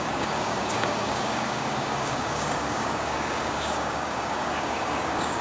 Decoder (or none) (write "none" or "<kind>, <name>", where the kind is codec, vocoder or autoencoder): codec, DAC